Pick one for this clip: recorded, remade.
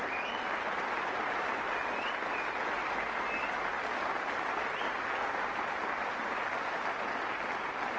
recorded